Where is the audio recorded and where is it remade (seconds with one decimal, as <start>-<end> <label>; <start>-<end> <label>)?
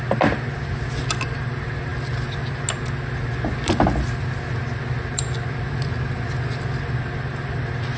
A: 0.0-8.0 recorded